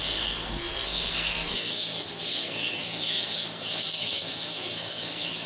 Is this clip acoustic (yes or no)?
no